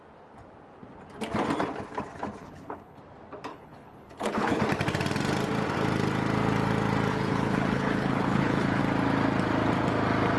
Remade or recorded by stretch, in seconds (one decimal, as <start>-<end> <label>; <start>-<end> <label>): 0.0-2.4 recorded; 2.4-3.0 remade; 3.0-3.5 recorded; 3.5-4.6 remade; 4.6-7.1 recorded; 7.1-8.8 remade; 8.8-10.4 recorded

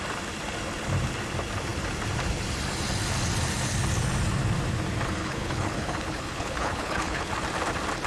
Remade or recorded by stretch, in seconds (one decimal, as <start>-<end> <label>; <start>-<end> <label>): 0.0-5.2 recorded; 5.2-7.3 remade; 7.3-8.1 recorded

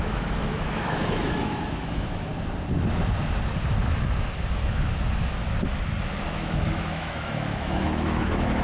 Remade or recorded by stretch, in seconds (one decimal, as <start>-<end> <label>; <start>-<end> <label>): 0.0-2.3 remade; 2.3-6.2 recorded; 6.2-8.6 remade

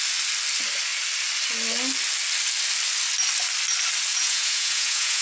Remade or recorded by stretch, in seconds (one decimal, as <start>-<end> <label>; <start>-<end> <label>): 0.0-4.1 recorded; 4.1-5.2 remade